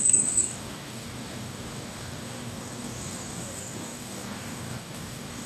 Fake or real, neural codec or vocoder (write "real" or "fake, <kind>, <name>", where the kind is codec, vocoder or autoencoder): fake, codec, DAC